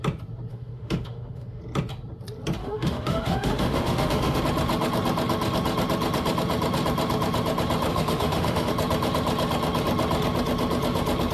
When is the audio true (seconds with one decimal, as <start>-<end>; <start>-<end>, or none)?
0.0-0.5; 1.6-2.6; 4.4-7.9; 8.7-11.3